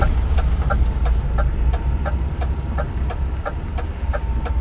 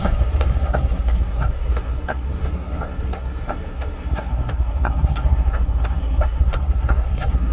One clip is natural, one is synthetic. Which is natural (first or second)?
first